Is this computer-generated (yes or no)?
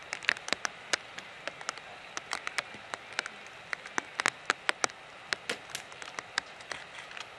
no